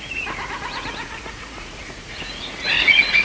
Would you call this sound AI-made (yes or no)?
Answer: yes